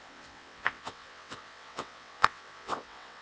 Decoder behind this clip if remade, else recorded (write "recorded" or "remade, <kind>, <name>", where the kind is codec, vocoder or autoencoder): remade, vocoder, WaveNeXt